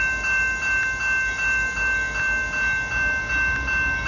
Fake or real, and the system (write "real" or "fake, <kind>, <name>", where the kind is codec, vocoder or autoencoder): real